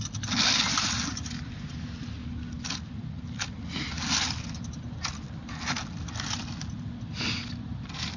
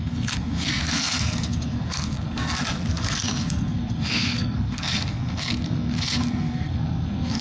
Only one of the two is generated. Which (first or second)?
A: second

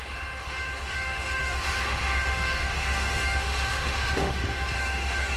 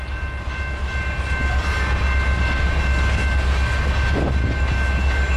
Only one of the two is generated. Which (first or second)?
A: first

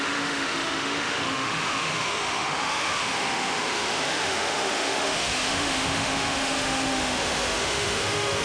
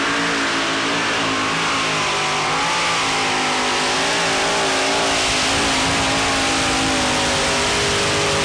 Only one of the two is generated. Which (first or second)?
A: first